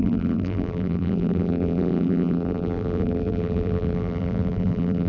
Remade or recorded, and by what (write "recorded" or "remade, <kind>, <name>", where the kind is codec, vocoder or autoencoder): remade, vocoder, BigVGAN v2